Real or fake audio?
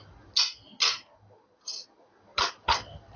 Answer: real